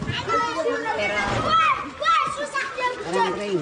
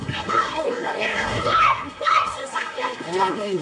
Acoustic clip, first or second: first